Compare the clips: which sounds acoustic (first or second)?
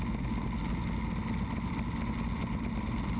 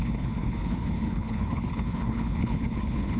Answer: first